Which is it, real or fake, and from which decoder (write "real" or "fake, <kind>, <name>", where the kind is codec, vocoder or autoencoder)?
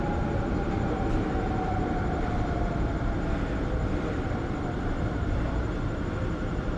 fake, vocoder, BigVGAN v2